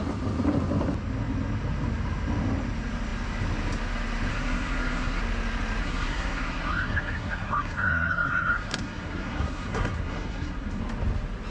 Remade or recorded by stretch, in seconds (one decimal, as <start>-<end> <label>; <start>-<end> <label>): 0.0-4.3 recorded; 4.3-5.2 remade; 5.2-5.8 recorded; 5.8-10.8 remade; 10.8-11.5 recorded